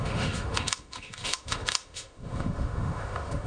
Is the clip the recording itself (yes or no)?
no